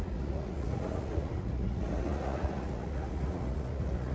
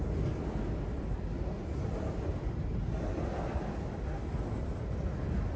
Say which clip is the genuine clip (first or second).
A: second